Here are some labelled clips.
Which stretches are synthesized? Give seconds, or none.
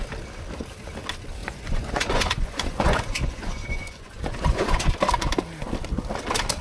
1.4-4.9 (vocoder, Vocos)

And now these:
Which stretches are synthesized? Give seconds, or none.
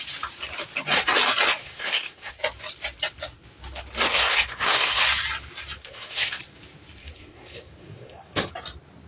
1.6-2.4 (codec, SNAC); 4.1-5.0; 5.8-6.4; 7.0-8.5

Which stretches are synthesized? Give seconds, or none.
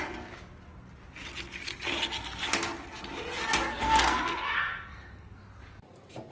3.7-5.4 (codec, SNAC)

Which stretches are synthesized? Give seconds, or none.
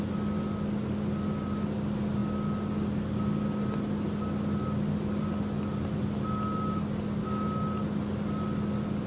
none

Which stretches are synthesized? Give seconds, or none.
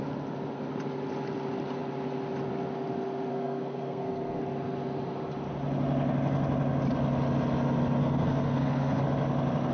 3.3-4.4 (codec, SNAC); 8.0-9.0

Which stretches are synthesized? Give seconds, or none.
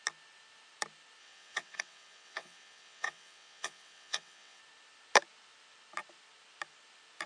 1.2-4.6 (vocoder, WaveNeXt)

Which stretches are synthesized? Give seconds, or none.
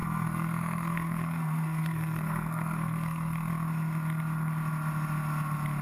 0.0-3.5 (codec, SNAC)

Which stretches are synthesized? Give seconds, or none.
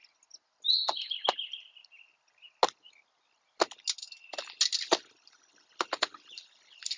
none